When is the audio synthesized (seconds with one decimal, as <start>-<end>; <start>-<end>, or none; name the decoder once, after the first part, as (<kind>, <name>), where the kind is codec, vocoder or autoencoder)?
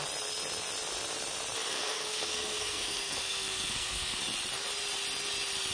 1.7-4.2 (codec, SNAC)